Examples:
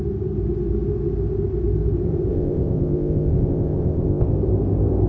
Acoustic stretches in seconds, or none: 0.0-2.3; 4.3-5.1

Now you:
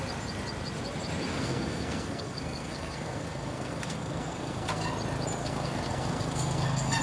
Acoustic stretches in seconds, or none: 0.0-1.3; 4.9-5.4

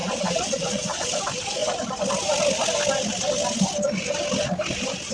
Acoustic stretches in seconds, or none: 1.2-5.1

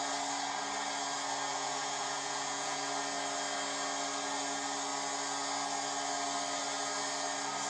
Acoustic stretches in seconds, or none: 0.0-1.5; 2.8-7.7